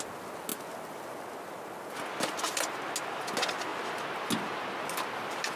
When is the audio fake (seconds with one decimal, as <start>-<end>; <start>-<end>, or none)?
none